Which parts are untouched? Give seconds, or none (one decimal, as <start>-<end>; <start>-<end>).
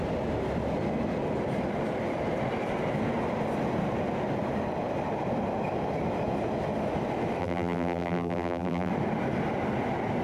0.0-7.4; 8.9-10.2